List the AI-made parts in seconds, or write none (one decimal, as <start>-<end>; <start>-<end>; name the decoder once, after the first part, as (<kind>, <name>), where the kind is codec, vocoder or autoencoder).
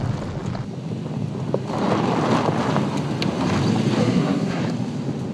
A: 4.0-4.6 (codec, SNAC)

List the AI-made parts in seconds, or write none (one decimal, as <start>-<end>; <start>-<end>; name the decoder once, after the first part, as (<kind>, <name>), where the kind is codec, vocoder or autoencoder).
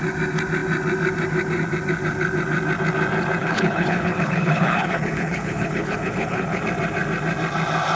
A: 3.4-6.6 (codec, HILCodec)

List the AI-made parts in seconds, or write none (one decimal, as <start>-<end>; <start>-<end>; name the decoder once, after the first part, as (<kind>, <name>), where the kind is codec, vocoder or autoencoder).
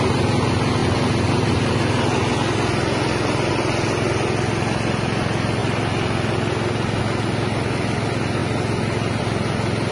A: none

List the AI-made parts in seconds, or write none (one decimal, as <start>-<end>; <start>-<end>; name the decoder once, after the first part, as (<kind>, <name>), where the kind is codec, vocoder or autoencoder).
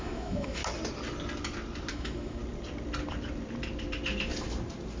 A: 0.0-0.6 (autoencoder, DAC-VAE); 1.9-2.4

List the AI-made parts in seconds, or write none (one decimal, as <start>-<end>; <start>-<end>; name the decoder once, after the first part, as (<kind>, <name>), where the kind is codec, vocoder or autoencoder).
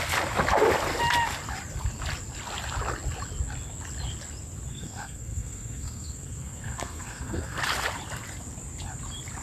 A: 4.7-7.6 (codec, SNAC)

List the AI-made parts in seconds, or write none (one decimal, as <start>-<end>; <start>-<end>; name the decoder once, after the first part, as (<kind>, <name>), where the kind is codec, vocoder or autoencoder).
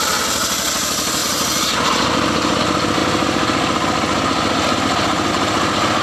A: 1.2-2.6 (vocoder, BigVGAN v2)